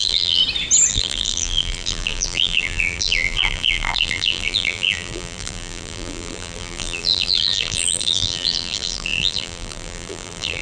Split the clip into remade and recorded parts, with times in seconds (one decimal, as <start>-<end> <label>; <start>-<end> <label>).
0.0-0.4 remade; 0.4-0.9 recorded; 0.9-10.6 remade

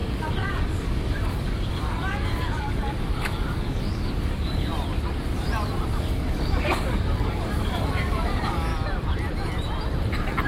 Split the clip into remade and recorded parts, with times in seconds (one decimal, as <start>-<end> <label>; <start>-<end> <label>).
0.0-4.7 remade; 4.7-5.9 recorded; 5.9-8.7 remade; 8.7-10.5 recorded